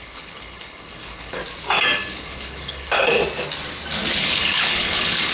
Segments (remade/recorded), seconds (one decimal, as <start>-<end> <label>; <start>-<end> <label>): 0.0-1.4 remade; 1.4-2.1 recorded; 2.1-3.2 remade; 3.2-4.2 recorded; 4.2-5.3 remade